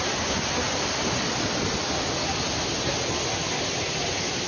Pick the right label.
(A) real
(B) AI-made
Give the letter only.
A